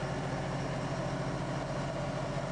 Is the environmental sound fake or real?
real